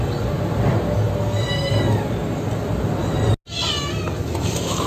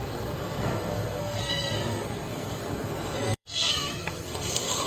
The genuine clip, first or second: first